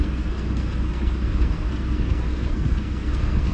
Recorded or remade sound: remade